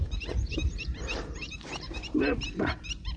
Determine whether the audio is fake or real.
fake